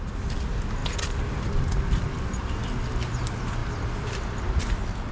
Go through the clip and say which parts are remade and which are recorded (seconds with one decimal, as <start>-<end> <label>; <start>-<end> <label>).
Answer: 0.0-5.1 recorded

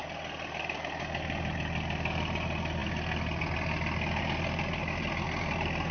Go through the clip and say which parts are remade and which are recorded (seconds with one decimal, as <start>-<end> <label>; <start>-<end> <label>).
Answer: 0.0-5.9 recorded

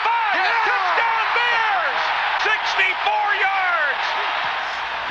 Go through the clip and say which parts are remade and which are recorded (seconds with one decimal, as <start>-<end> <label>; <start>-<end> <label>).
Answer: 0.0-5.1 recorded

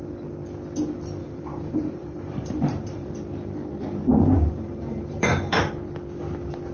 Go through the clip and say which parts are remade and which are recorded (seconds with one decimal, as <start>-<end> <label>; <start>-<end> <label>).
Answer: 0.0-1.2 recorded; 1.2-3.1 remade; 3.1-4.1 recorded; 4.1-5.6 remade; 5.6-6.7 recorded

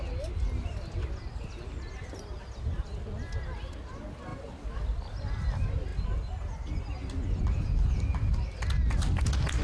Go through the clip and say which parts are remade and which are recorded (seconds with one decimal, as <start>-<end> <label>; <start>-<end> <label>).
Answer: 0.0-4.3 recorded; 4.3-5.5 remade; 5.5-9.6 recorded

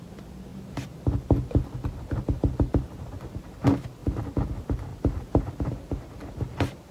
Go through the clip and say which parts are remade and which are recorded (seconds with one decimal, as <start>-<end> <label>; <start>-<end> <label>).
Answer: 0.0-4.9 recorded; 4.9-5.7 remade; 5.7-6.9 recorded

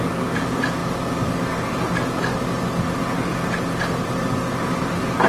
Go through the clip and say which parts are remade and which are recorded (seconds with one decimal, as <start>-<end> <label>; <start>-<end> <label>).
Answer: 0.0-5.3 recorded